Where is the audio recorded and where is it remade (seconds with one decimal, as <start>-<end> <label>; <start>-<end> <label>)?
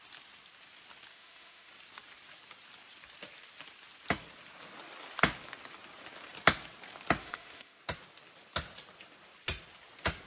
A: 0.0-1.1 recorded; 1.1-1.7 remade; 1.7-7.2 recorded; 7.2-7.8 remade; 7.8-10.3 recorded